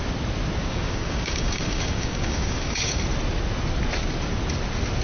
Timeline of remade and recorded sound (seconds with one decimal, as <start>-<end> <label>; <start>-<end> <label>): 0.0-0.6 recorded; 0.6-3.0 remade; 3.0-5.0 recorded